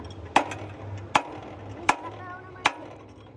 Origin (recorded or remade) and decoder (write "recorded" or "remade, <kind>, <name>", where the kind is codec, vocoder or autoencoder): recorded